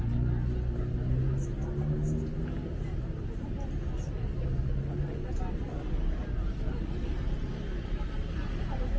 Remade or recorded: recorded